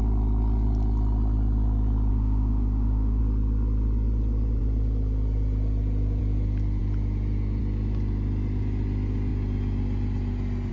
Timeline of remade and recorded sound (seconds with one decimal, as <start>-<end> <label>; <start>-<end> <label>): 0.0-2.1 recorded; 2.1-3.2 remade; 3.2-10.7 recorded